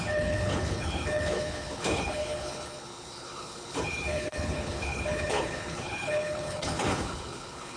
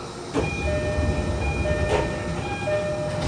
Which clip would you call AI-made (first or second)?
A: first